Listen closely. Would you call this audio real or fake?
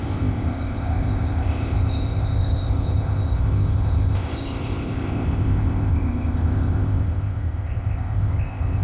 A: fake